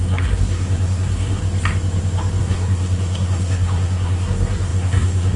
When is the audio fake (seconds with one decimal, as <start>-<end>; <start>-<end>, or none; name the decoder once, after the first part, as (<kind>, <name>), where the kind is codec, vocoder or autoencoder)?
0.0-1.4 (codec, SNAC); 2.4-5.4